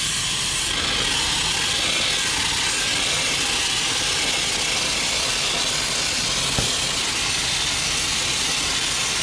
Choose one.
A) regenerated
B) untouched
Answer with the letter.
B